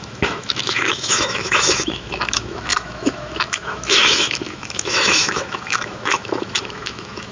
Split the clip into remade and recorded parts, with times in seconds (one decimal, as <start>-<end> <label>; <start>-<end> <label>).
0.0-7.3 remade

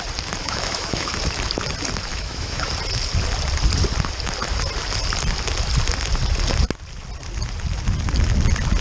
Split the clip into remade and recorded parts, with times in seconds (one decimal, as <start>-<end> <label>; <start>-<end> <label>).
0.0-0.4 recorded; 0.4-1.1 remade; 1.1-2.1 recorded; 2.1-2.7 remade; 2.7-8.8 recorded

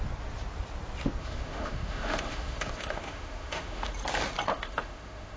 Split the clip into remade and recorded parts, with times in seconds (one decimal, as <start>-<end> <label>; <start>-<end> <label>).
0.0-1.2 recorded; 1.2-3.9 remade; 3.9-4.5 recorded; 4.5-5.4 remade

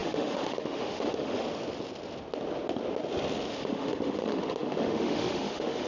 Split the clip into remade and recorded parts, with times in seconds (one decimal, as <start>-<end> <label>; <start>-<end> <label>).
0.0-1.4 remade; 1.4-3.5 recorded; 3.5-5.9 remade